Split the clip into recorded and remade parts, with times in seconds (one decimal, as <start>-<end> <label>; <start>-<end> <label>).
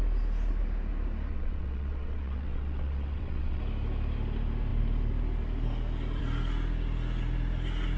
0.0-1.3 recorded; 1.3-3.6 remade; 3.6-8.0 recorded